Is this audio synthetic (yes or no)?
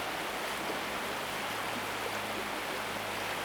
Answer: no